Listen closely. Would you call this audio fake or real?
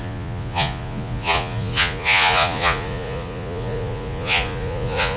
fake